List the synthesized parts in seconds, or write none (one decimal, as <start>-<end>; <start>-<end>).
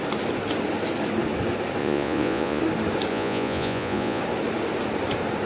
1.8-2.6; 3.1-4.2